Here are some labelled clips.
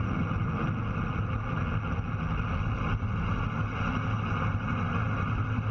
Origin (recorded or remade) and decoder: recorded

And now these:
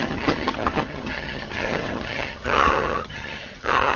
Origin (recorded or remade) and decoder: remade, vocoder, HiFi-GAN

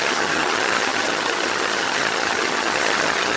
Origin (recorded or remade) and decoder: remade, vocoder, HiFi-GAN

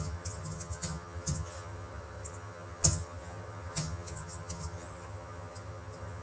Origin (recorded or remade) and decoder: remade, vocoder, HiFi-GAN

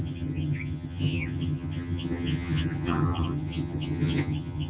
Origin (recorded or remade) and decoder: remade, vocoder, HiFi-GAN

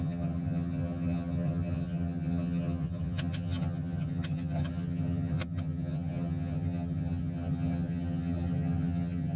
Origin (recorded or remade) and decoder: remade, vocoder, HiFi-GAN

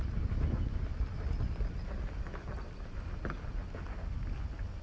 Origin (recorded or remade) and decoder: recorded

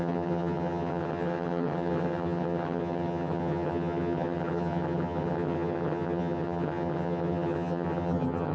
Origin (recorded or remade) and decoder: remade, vocoder, HiFi-GAN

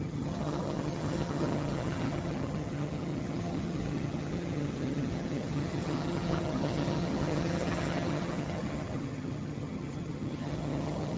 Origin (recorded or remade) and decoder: remade, vocoder, HiFi-GAN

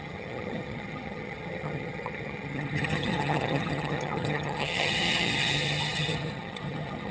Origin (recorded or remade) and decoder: remade, vocoder, HiFi-GAN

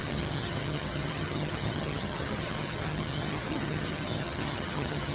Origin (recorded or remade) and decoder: remade, vocoder, HiFi-GAN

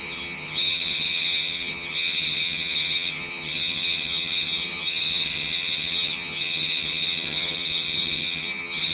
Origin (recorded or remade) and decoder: remade, vocoder, HiFi-GAN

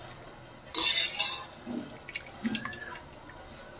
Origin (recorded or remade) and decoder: recorded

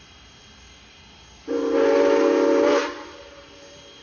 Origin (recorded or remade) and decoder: recorded